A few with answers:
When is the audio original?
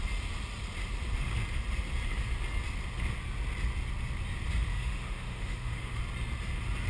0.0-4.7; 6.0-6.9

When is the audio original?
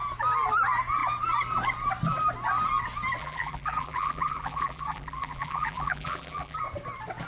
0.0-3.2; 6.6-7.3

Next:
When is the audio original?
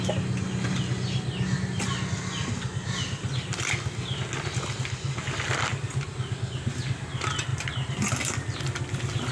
0.0-9.3